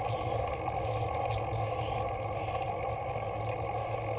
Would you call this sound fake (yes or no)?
no